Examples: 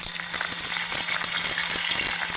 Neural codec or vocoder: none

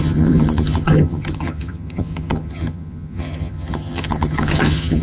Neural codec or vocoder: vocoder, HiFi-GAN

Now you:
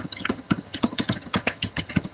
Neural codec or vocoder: vocoder, HiFi-GAN